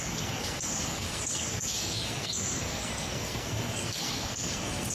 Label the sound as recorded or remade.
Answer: remade